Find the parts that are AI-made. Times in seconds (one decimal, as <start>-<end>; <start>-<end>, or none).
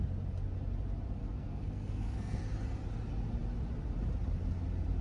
1.2-2.4